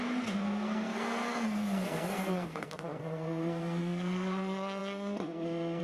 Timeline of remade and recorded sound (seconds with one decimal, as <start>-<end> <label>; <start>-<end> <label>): 0.0-5.8 remade